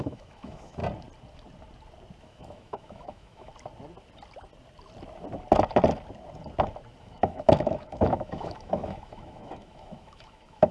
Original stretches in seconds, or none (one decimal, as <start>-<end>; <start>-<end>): 0.8-2.2; 3.5-7.0